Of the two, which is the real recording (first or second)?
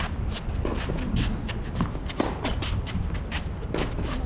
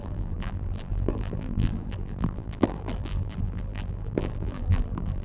first